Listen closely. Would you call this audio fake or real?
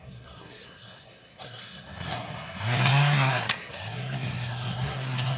fake